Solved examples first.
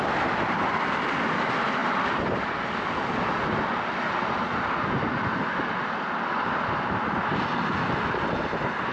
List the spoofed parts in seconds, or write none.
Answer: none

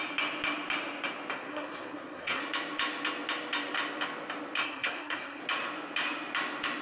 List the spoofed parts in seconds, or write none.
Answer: 1.3-2.4; 4.6-5.4